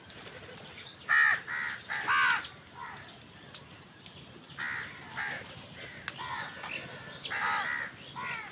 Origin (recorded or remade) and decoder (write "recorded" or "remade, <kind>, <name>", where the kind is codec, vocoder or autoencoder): recorded